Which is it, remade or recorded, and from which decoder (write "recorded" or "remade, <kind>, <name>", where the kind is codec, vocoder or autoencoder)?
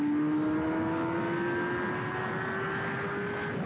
recorded